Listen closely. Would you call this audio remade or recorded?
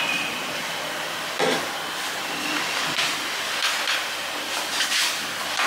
recorded